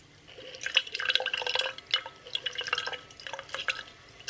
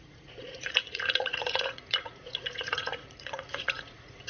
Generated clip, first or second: second